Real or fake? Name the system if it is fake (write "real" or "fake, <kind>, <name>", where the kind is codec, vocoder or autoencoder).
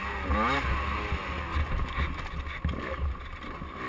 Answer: real